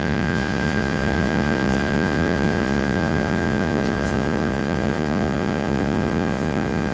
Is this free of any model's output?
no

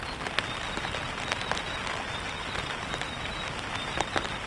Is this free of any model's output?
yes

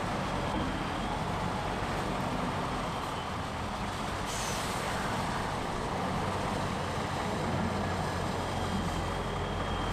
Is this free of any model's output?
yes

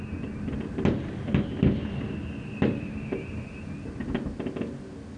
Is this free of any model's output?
yes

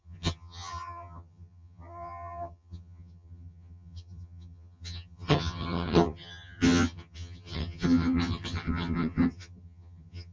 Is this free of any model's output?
no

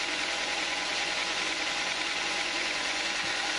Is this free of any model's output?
no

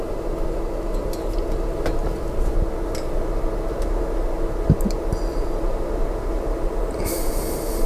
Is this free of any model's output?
yes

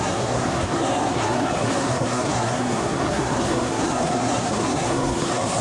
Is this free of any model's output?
no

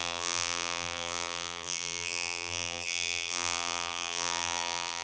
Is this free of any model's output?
no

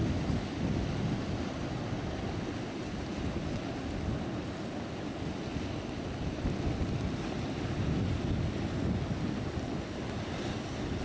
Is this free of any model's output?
yes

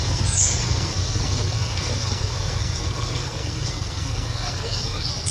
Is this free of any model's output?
no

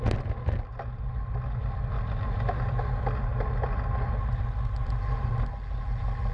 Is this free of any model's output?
yes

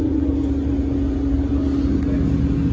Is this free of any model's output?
yes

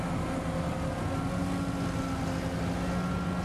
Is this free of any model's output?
yes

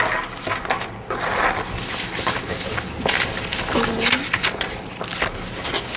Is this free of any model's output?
yes